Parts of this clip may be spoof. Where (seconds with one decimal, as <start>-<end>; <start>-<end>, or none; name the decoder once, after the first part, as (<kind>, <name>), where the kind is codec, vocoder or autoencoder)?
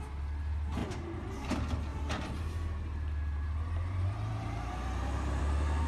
0.8-1.5 (vocoder, BigVGAN v2); 1.9-5.4